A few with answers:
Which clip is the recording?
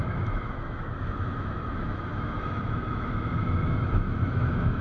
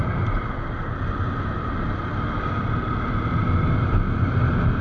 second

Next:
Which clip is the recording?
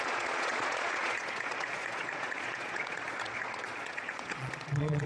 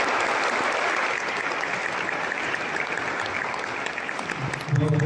second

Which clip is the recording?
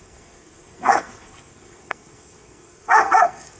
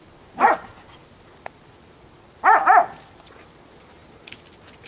second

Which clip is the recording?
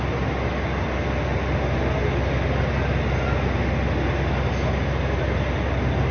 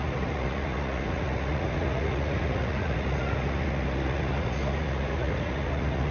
first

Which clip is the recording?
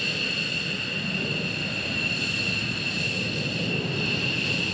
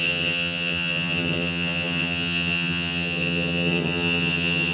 first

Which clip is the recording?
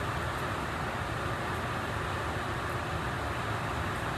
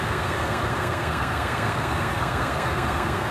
first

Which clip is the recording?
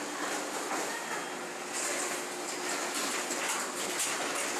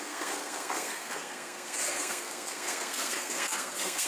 first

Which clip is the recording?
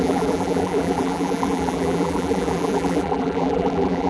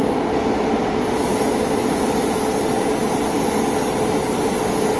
second